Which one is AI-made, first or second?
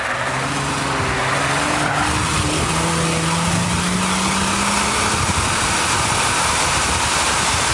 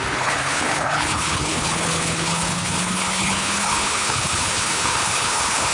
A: second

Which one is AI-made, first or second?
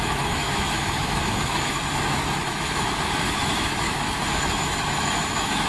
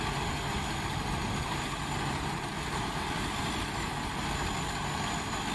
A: first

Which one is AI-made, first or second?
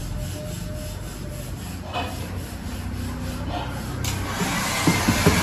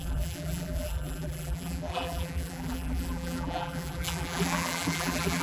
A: second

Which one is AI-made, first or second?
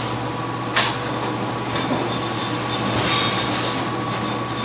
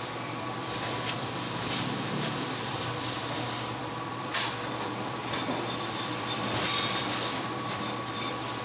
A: second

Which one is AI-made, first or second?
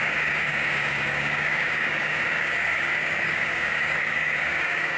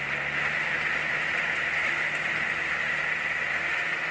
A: first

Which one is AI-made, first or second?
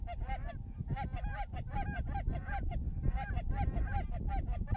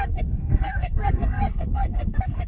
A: second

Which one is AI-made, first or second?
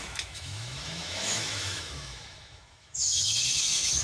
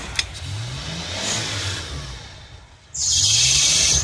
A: first